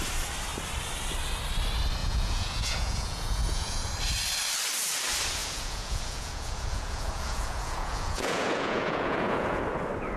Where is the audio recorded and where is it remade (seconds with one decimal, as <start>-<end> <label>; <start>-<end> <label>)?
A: 0.0-2.0 recorded; 2.0-3.9 remade; 3.9-5.4 recorded; 5.4-9.6 remade; 9.6-10.2 recorded